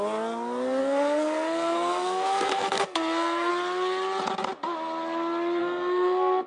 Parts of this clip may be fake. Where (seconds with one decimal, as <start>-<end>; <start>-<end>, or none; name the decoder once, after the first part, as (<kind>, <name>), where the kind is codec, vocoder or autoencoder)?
0.8-3.5 (codec, SNAC); 5.6-6.5